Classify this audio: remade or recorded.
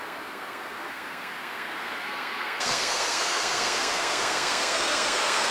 remade